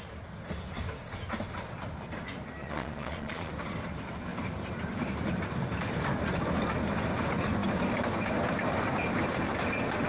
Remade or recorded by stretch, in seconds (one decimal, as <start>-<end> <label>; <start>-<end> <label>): 0.0-2.6 recorded; 2.6-3.5 remade; 3.5-10.1 recorded